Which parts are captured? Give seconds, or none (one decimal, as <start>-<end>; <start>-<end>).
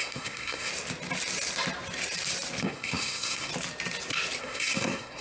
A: 0.7-2.6; 3.5-4.4